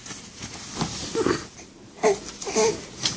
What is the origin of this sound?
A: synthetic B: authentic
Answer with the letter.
B